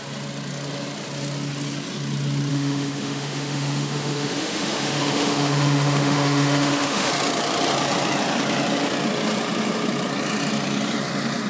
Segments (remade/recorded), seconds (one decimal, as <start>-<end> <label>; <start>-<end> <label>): 0.0-2.5 recorded; 2.5-7.1 remade; 7.1-11.5 recorded